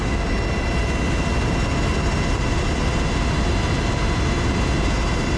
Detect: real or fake real